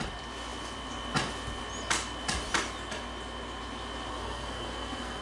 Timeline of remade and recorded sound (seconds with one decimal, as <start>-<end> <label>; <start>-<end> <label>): 0.0-4.1 recorded; 4.1-5.2 remade